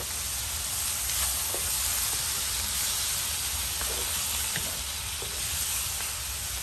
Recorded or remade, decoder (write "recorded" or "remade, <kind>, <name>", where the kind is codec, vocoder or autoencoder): recorded